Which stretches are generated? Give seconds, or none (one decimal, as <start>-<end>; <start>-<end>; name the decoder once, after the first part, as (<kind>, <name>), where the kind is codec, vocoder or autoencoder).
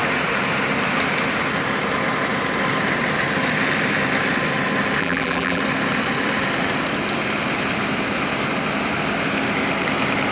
5.0-5.6 (vocoder, BigVGAN v2)